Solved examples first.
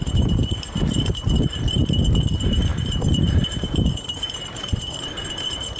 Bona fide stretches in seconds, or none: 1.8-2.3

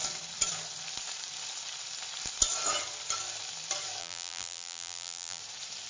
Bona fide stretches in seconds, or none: 0.0-4.0; 5.4-5.9

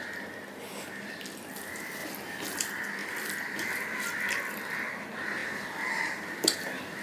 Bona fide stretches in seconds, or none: 0.0-2.0; 2.6-3.0; 4.1-5.4